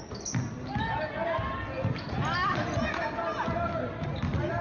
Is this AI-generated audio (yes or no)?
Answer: no